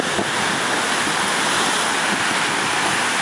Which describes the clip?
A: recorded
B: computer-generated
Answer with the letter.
A